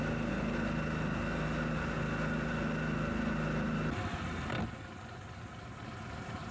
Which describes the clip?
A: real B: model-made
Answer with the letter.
A